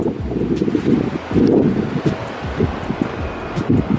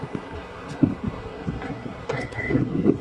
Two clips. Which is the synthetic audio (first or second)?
second